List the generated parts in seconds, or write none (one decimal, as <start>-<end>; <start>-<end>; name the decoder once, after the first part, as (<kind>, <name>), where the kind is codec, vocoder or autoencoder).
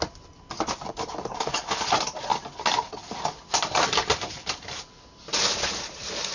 none